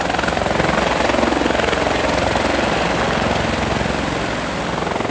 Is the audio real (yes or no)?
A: yes